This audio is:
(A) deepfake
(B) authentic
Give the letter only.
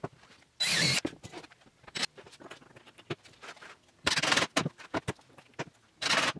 B